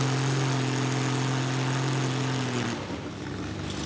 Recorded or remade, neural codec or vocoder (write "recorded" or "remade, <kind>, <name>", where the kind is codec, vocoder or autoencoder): recorded